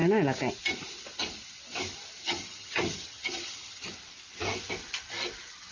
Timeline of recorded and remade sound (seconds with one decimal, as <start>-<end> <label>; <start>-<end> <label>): 0.0-2.2 recorded; 2.2-3.9 remade; 3.9-5.7 recorded